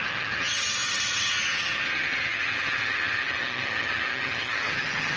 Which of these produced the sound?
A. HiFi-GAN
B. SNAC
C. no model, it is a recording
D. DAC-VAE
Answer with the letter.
A